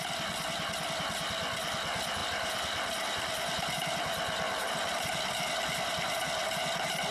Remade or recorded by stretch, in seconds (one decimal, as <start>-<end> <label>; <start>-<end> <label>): 0.0-7.1 recorded